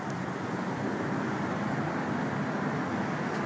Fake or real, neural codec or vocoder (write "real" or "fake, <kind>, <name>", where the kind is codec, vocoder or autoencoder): real